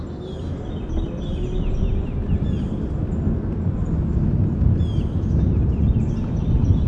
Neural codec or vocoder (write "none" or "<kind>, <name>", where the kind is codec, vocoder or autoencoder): none